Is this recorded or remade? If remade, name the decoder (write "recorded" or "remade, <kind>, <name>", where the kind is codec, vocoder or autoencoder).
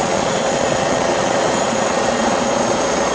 remade, vocoder, Vocos